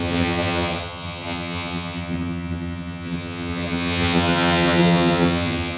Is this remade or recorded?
remade